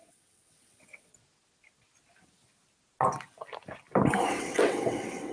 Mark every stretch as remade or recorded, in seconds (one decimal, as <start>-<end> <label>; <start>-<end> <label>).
0.0-1.1 remade; 1.1-4.3 recorded; 4.3-5.3 remade